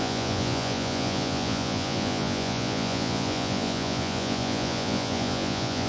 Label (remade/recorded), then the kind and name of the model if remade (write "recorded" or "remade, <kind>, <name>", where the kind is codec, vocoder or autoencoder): remade, vocoder, Vocos